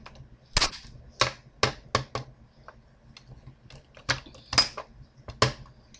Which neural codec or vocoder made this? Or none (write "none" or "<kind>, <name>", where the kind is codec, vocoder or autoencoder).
none